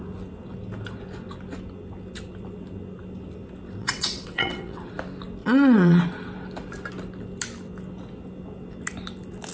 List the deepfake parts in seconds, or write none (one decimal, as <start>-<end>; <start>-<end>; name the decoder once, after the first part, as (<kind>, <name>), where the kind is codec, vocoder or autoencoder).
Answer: 3.8-4.8 (vocoder, WaveNeXt); 5.4-6.0